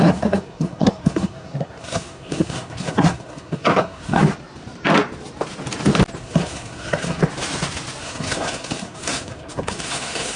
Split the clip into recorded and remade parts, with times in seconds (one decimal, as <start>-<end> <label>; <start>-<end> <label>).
0.0-4.2 remade; 4.2-6.2 recorded; 6.2-7.2 remade; 7.2-8.0 recorded; 8.0-10.4 remade